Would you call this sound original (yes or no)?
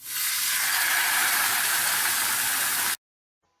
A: yes